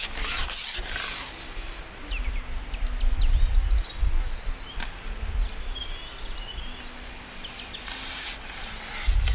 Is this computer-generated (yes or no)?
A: no